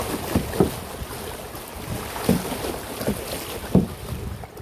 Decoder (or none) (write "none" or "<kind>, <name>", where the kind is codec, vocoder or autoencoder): none